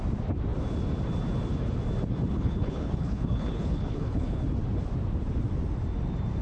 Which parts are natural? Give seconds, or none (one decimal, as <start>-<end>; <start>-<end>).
0.0-2.3; 4.4-6.4